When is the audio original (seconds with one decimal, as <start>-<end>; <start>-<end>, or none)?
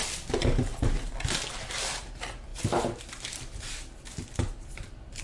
0.0-2.5; 3.0-5.2